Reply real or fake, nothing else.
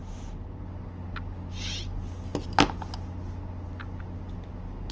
real